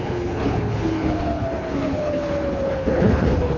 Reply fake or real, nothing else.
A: fake